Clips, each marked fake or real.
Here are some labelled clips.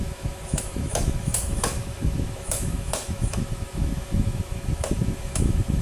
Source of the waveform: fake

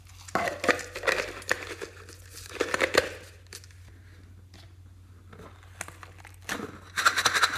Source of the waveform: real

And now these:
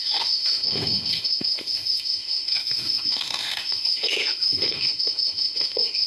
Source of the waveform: fake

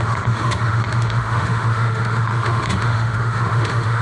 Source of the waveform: fake